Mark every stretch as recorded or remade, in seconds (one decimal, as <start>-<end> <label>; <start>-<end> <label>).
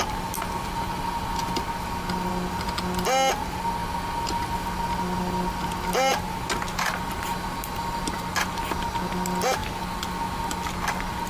0.0-11.3 recorded